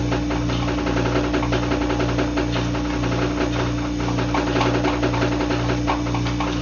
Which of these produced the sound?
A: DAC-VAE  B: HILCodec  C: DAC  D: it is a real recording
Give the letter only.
D